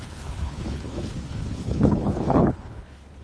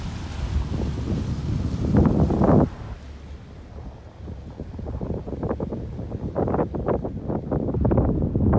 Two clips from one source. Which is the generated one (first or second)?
first